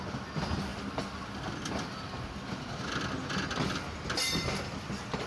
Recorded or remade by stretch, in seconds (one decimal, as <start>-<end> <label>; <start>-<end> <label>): 0.0-5.3 recorded